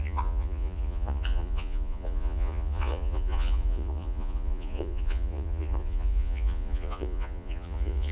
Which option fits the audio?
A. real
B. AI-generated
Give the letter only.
B